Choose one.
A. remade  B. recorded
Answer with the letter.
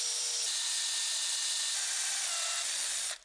B